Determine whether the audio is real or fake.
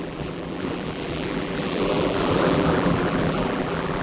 fake